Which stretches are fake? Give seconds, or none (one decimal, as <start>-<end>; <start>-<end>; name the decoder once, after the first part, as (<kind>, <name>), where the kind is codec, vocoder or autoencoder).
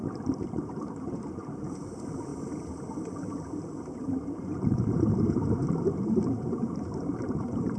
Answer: 0.7-2.3 (vocoder, BigVGAN v2); 3.8-7.8